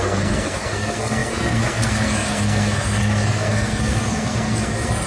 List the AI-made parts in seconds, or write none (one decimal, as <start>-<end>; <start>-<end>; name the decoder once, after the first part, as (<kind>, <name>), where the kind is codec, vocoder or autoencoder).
0.0-5.1 (codec, SNAC)